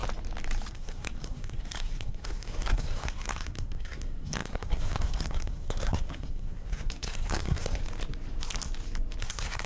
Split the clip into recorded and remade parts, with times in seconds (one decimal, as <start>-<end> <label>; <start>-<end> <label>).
0.0-0.7 recorded; 0.7-7.8 remade; 7.8-9.2 recorded; 9.2-9.7 remade